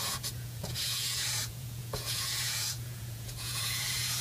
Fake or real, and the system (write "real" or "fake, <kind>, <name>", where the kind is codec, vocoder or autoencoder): fake, vocoder, Vocos